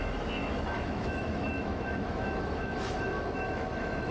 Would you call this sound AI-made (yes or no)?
yes